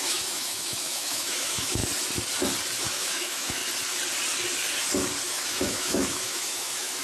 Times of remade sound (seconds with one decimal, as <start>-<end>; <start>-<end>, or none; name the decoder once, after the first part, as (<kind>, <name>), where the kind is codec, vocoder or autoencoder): 0.0-1.8 (autoencoder, DAC-VAE); 2.8-3.6; 5.3-7.0